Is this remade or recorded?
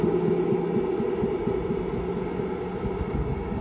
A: recorded